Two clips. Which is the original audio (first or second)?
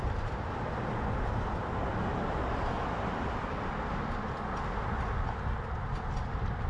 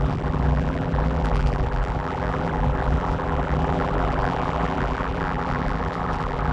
first